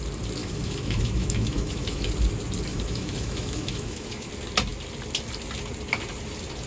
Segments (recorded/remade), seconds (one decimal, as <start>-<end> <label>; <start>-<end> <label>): 0.0-0.4 recorded; 0.4-2.1 remade; 2.1-2.7 recorded; 2.7-4.3 remade; 4.3-6.7 recorded